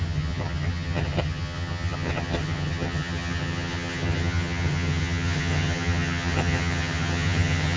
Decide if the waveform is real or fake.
fake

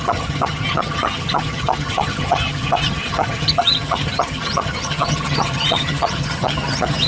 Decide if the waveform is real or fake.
fake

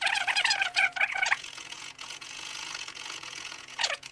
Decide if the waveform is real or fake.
fake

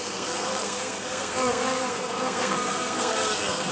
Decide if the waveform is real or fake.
fake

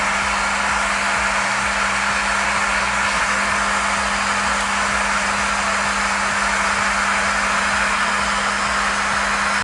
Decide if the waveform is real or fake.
real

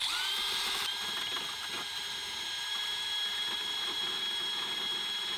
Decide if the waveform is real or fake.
fake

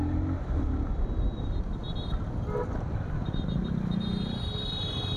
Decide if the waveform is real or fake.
real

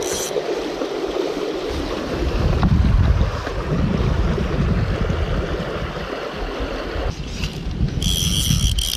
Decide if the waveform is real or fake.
real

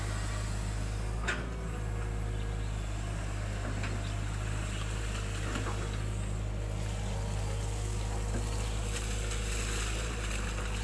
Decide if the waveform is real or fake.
real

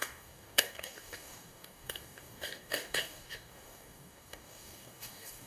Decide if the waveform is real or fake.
fake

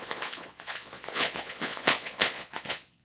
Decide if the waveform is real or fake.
fake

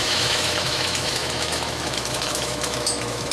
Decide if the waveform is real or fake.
fake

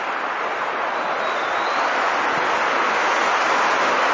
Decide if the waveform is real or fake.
real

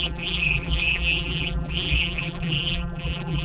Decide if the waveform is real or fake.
fake